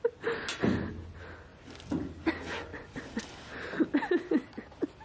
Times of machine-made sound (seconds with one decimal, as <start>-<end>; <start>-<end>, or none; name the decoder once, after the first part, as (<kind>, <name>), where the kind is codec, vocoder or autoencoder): 2.7-3.2 (vocoder, Vocos)